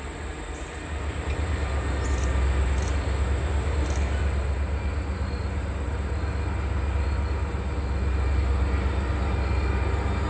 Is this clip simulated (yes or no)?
no